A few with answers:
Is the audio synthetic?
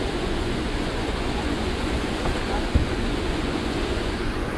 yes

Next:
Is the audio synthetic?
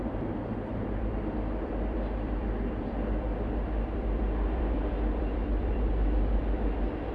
yes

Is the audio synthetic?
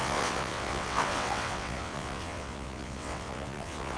yes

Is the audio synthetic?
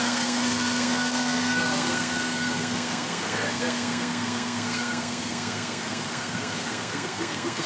yes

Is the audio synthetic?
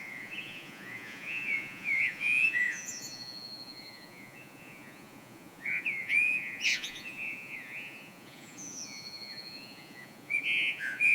yes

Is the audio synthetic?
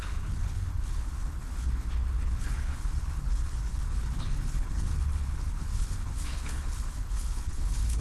yes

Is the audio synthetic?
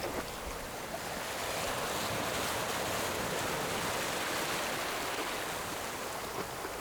no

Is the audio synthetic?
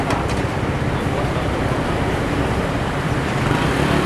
yes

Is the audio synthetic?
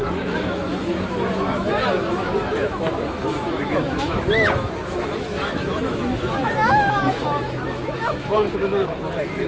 yes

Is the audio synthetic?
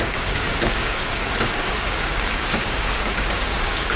yes